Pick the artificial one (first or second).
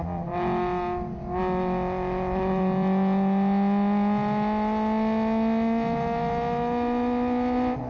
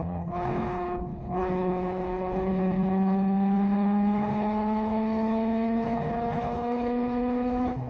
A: second